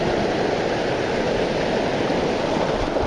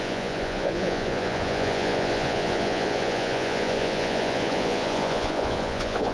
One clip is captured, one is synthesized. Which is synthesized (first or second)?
second